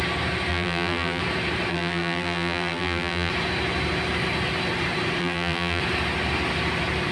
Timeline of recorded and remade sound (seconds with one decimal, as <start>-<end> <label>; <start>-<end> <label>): 0.0-0.5 recorded; 0.5-1.2 remade; 1.2-1.7 recorded; 1.7-3.3 remade; 3.3-5.2 recorded; 5.2-5.8 remade; 5.8-7.1 recorded